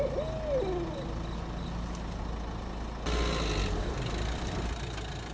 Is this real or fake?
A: real